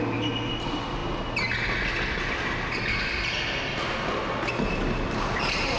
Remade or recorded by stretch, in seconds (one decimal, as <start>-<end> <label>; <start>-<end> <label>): 0.0-5.8 recorded